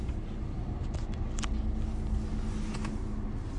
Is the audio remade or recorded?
recorded